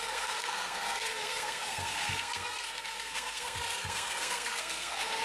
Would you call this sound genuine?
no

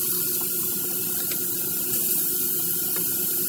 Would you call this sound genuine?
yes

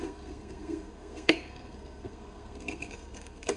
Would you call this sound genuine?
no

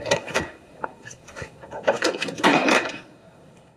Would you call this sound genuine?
no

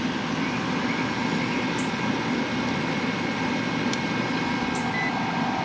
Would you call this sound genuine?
yes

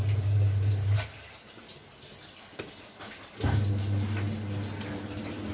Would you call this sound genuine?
yes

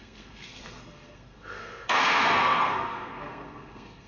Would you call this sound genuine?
no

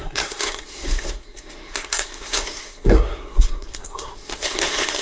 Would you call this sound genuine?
no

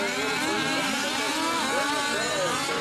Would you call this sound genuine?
yes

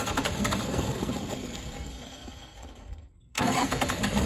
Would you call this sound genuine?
no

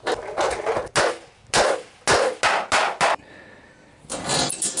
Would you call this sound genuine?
yes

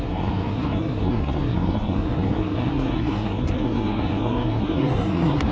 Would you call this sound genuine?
no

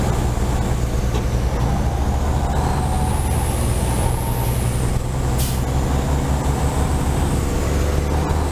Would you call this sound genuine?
yes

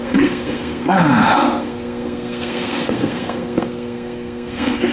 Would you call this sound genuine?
no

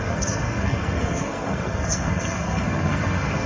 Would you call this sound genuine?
no